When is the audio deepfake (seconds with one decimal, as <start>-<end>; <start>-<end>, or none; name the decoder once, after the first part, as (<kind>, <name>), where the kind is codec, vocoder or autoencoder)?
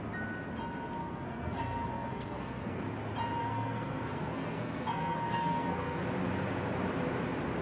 1.0-2.8 (codec, SNAC); 3.4-6.0